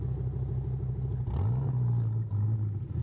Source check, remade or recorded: recorded